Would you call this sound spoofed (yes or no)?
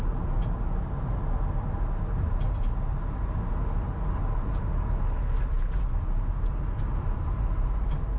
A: no